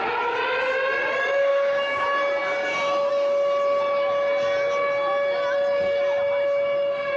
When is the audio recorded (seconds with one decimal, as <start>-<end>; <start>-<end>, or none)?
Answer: 0.0-1.5; 2.0-7.2

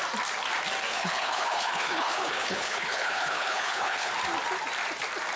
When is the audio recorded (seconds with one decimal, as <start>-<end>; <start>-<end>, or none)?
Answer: 0.0-0.9; 4.1-5.4

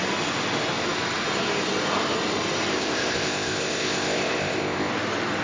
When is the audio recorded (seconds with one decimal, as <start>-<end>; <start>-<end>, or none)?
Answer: 0.0-2.7; 4.9-5.4

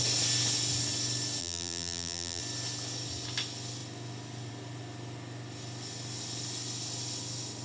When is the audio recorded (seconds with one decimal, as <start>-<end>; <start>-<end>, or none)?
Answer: 0.0-1.4; 2.4-7.6

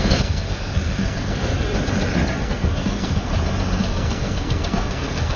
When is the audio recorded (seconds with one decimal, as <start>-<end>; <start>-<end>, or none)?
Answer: 1.5-2.4; 3.3-3.8

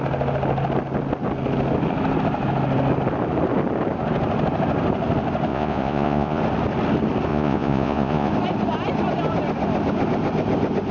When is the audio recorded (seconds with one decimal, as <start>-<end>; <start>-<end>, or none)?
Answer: 0.0-5.5; 6.4-7.3; 8.3-10.9

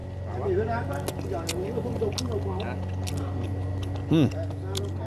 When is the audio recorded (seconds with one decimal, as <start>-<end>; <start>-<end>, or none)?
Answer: 0.0-5.1

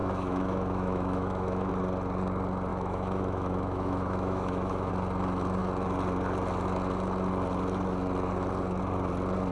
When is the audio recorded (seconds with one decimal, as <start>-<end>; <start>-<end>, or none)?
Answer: 1.7-2.7; 4.9-9.5